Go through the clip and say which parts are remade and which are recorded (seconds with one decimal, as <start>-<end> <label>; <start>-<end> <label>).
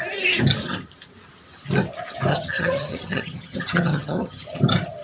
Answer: 0.0-2.3 recorded; 2.3-4.6 remade; 4.6-5.0 recorded